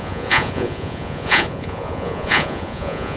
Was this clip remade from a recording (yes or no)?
yes